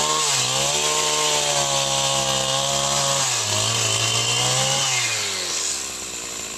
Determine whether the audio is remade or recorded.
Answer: recorded